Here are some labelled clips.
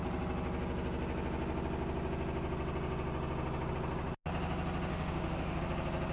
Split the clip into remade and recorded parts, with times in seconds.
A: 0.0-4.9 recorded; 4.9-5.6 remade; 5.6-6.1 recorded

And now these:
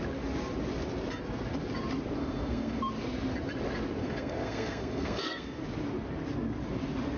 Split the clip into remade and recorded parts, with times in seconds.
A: 0.0-2.2 recorded; 2.2-2.8 remade; 2.8-4.0 recorded; 4.0-5.6 remade; 5.6-7.2 recorded

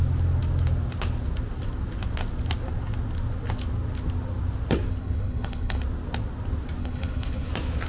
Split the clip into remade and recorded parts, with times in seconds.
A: 0.0-4.9 recorded; 4.9-5.8 remade; 5.8-6.8 recorded; 6.8-7.5 remade; 7.5-7.9 recorded

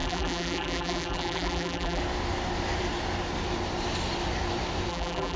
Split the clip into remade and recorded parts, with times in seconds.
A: 0.0-2.0 remade; 2.0-4.9 recorded; 4.9-5.4 remade

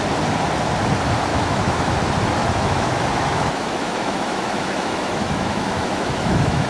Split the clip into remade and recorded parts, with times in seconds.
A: 0.0-1.3 recorded; 1.3-1.9 remade; 1.9-2.4 recorded; 2.4-6.7 remade

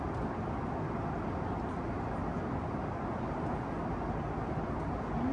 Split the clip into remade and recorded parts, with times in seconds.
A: 0.0-5.3 recorded

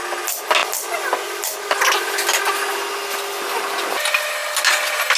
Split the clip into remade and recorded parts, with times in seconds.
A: 0.0-5.2 recorded